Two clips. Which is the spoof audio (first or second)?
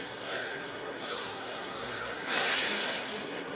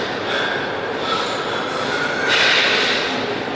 first